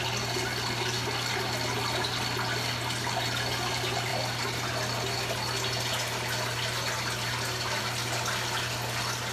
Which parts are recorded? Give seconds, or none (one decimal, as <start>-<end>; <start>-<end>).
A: 0.0-9.3